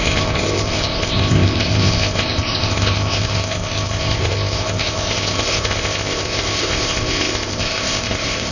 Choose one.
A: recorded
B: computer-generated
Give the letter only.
B